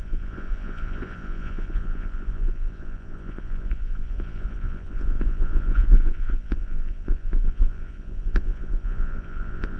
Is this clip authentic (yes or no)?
no